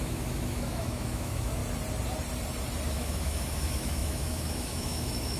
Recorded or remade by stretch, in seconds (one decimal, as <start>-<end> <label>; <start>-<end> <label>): 0.0-1.6 remade; 1.6-2.9 recorded; 2.9-5.4 remade